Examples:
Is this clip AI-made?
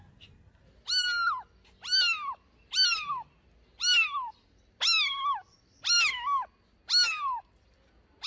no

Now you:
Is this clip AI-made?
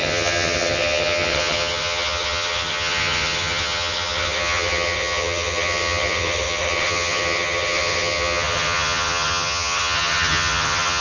yes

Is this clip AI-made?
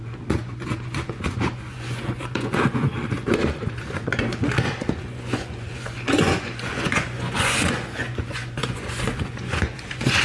yes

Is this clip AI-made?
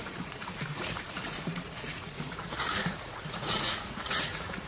yes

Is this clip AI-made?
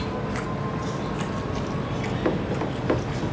no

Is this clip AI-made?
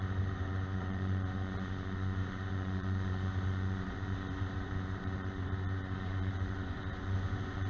yes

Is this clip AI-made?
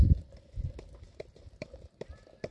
no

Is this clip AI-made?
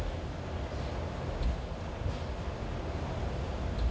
no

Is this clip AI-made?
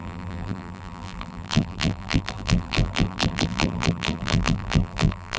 yes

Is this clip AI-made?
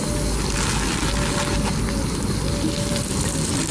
no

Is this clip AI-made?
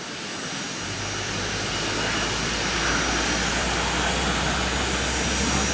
no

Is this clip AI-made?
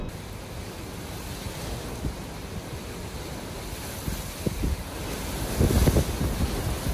no